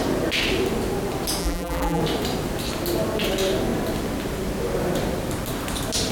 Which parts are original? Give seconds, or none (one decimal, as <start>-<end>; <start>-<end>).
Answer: 0.0-1.4; 2.0-6.1